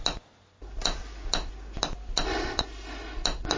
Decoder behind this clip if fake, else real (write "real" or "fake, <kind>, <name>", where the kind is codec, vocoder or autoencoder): real